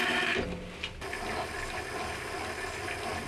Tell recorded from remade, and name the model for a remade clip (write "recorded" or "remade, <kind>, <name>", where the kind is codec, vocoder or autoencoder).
recorded